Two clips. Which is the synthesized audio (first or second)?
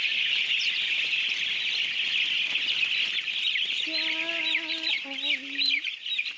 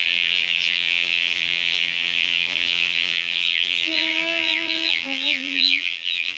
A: second